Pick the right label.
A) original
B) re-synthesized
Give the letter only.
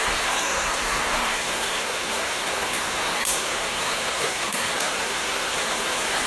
B